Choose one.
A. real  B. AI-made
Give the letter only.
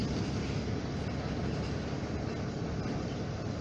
A